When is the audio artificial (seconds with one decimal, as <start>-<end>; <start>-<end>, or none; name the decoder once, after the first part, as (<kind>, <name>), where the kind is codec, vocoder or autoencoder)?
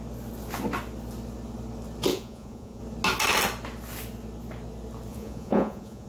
2.1-2.8 (vocoder, Vocos); 5.1-6.1